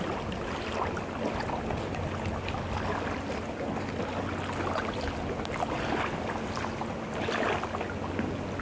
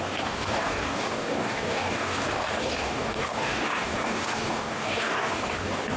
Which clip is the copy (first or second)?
second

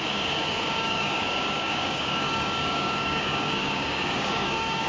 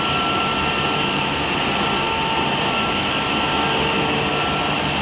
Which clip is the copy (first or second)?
first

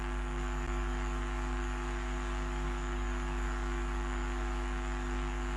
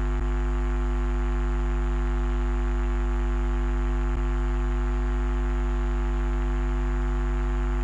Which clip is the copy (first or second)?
first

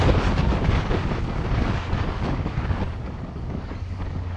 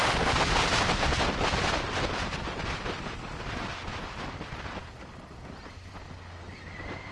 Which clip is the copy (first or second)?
first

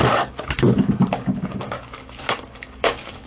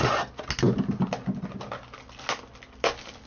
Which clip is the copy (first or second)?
first